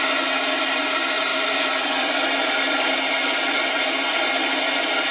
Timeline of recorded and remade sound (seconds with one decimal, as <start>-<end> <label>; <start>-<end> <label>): 0.0-1.3 recorded; 1.3-3.0 remade; 3.0-5.1 recorded